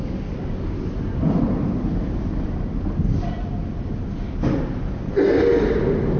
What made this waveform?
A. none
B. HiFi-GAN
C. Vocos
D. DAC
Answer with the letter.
A